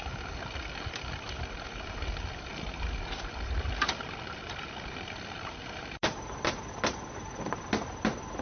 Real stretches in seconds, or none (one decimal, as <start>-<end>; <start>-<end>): 0.0-8.4